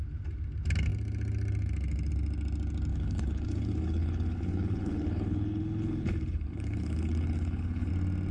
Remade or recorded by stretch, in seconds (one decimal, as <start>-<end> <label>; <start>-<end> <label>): 0.0-2.9 recorded; 2.9-7.9 remade; 7.9-8.3 recorded